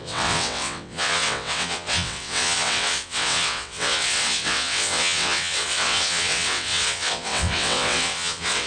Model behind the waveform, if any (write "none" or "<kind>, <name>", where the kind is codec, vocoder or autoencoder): vocoder, WaveNeXt